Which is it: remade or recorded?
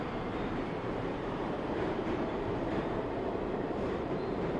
remade